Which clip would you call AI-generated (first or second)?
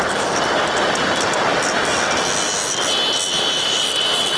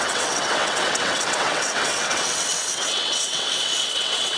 second